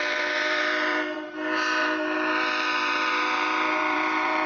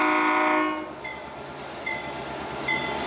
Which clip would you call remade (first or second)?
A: first